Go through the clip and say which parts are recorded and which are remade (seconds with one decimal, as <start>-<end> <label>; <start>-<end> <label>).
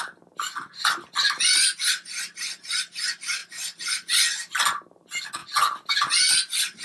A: 0.0-3.4 recorded; 3.4-4.2 remade; 4.2-5.4 recorded; 5.4-5.9 remade; 5.9-6.8 recorded